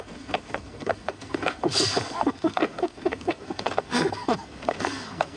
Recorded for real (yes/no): no